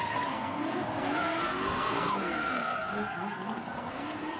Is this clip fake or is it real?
fake